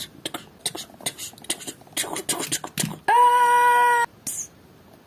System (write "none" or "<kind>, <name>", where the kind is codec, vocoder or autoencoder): none